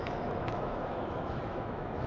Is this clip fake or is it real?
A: fake